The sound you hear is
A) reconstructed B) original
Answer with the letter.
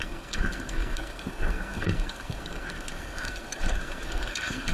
A